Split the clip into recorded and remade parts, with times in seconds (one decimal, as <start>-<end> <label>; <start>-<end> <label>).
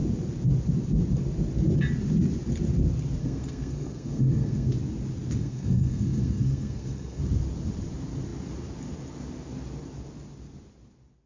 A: 0.0-3.2 recorded; 3.2-4.7 remade; 4.7-5.4 recorded; 5.4-7.2 remade; 7.2-11.3 recorded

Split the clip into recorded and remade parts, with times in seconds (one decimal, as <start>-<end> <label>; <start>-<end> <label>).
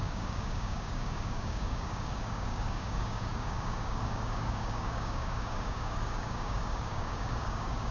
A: 0.0-7.9 remade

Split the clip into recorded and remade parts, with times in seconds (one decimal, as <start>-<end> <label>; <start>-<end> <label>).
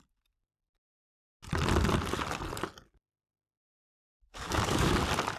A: 0.0-3.7 recorded; 3.7-5.0 remade; 5.0-5.4 recorded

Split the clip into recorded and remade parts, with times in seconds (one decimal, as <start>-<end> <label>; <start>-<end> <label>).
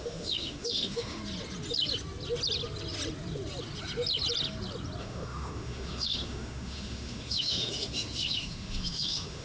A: 0.0-1.2 remade; 1.2-5.0 recorded; 5.0-9.4 remade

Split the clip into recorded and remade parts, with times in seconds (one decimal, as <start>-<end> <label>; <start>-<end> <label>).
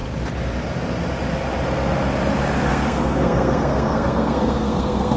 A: 0.0-2.7 recorded; 2.7-5.2 remade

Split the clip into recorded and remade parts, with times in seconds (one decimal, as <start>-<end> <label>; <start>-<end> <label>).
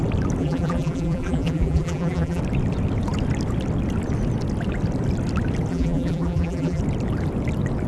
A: 0.0-0.4 recorded; 0.4-2.4 remade; 2.4-5.7 recorded; 5.7-6.8 remade; 6.8-7.9 recorded